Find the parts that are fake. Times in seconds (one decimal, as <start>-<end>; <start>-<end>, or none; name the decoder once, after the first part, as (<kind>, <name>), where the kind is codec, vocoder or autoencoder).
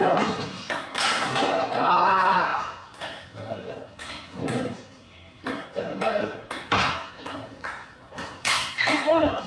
0.0-9.5 (codec, SNAC)